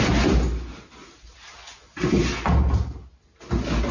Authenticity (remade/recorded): recorded